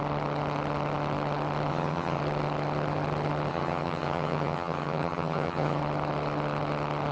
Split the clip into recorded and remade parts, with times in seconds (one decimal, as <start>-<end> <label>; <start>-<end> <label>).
0.0-1.7 recorded; 1.7-2.2 remade; 2.2-3.5 recorded; 3.5-5.8 remade; 5.8-7.1 recorded

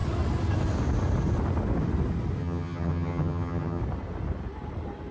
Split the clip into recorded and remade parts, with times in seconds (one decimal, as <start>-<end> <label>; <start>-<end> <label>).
0.0-2.4 recorded; 2.4-3.8 remade; 3.8-5.1 recorded

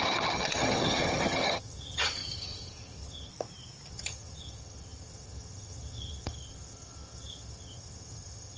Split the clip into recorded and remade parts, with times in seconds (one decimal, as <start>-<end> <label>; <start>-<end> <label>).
0.0-3.3 remade; 3.3-3.9 recorded; 3.9-8.6 remade